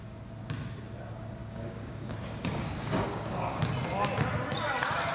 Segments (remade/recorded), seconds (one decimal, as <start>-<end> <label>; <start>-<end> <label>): 0.0-1.4 recorded; 1.4-3.6 remade; 3.6-5.1 recorded